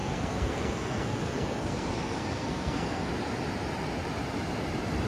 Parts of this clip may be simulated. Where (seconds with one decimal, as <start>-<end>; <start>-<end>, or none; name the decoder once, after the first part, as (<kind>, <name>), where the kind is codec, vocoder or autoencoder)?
0.0-3.1 (codec, SNAC)